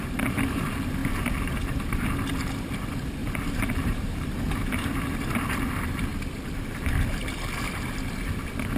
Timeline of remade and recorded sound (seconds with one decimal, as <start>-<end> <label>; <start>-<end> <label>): 0.0-3.2 recorded; 3.2-4.4 remade; 4.4-8.8 recorded